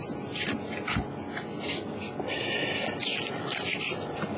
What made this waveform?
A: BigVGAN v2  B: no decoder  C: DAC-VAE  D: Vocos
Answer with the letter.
B